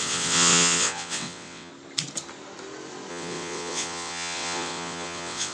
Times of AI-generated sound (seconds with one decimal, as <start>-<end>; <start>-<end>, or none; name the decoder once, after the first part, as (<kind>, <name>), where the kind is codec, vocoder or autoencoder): 0.0-1.7 (vocoder, WaveNeXt); 3.1-5.5